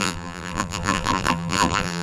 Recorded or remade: remade